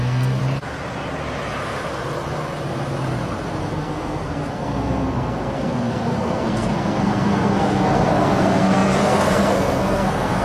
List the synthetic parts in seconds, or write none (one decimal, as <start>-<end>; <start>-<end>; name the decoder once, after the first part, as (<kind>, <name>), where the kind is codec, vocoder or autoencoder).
0.0-0.4 (codec, SNAC); 3.6-10.4